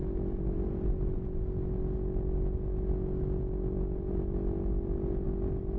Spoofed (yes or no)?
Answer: no